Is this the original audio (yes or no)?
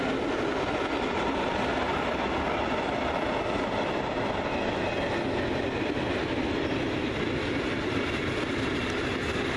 yes